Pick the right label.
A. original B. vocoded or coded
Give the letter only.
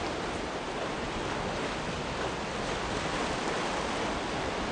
A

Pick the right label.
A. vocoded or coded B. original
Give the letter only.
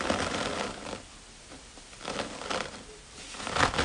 A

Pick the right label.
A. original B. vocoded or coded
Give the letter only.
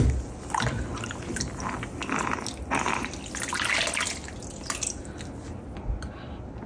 A